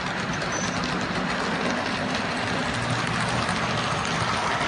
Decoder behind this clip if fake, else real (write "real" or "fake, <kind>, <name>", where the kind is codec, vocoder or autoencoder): real